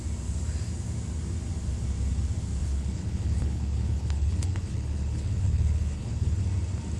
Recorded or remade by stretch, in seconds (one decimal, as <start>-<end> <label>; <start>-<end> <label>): 0.0-2.6 recorded; 2.6-6.4 remade; 6.4-7.0 recorded